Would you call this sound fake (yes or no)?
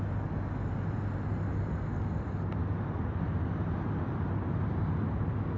no